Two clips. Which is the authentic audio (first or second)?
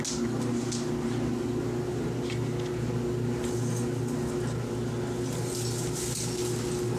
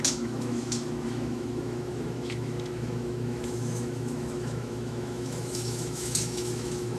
first